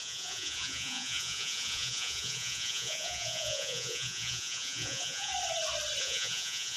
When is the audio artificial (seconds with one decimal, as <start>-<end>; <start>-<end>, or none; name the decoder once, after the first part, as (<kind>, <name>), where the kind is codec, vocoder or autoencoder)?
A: 0.0-5.3 (vocoder, Vocos); 6.0-6.8